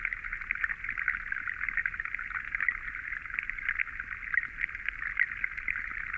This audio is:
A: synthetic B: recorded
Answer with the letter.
B